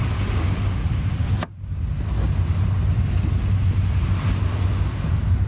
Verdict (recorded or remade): recorded